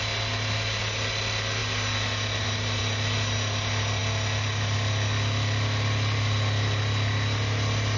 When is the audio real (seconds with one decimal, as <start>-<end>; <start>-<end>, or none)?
0.0-8.0